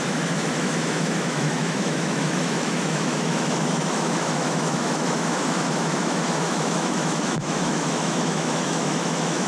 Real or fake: fake